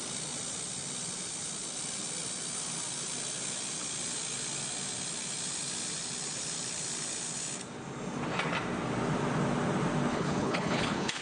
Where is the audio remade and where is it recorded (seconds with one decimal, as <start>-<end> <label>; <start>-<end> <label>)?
0.0-10.1 recorded; 10.1-11.2 remade